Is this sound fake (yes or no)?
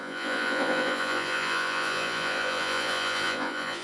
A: yes